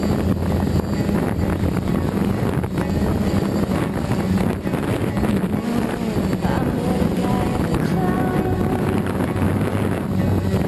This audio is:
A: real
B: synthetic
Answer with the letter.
A